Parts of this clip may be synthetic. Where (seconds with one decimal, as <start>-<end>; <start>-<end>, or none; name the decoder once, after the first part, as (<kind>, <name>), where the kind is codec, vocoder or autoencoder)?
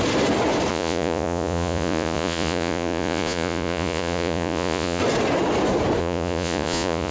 0.7-5.0 (vocoder, Vocos); 6.0-7.1